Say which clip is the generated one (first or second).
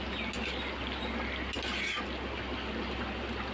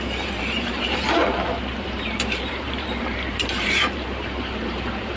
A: second